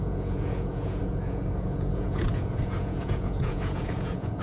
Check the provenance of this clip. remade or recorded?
remade